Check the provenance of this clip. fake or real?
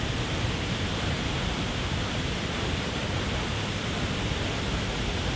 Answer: real